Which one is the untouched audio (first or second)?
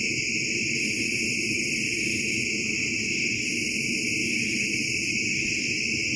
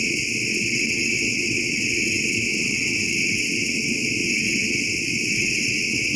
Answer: first